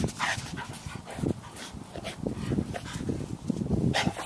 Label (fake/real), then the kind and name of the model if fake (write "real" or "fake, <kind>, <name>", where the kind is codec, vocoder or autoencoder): real